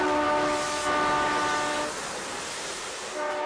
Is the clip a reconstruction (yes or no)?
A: no